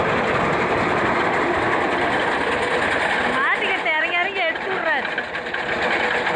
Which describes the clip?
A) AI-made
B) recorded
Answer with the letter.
B